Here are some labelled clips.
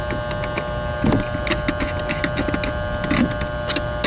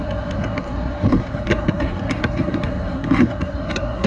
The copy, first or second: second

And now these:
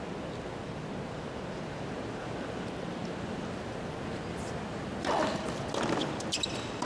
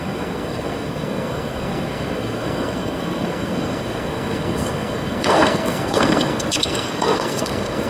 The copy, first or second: second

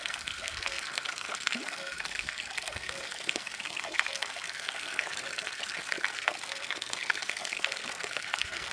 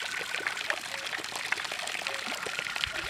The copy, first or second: first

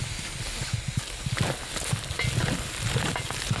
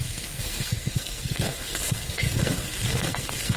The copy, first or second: second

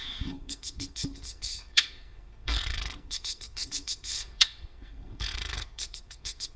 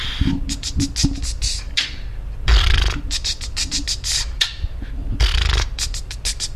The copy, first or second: first